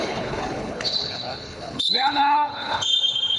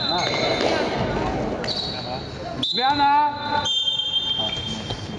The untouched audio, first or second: second